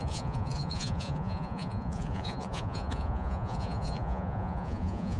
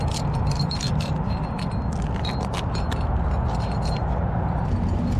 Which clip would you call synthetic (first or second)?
first